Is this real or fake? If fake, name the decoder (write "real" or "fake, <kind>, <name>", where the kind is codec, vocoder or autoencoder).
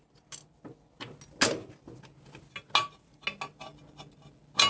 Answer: real